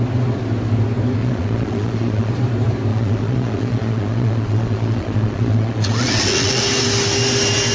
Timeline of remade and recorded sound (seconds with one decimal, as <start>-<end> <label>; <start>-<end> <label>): 0.0-1.2 recorded; 1.2-2.3 remade; 2.3-2.9 recorded; 2.9-6.6 remade; 6.6-7.7 recorded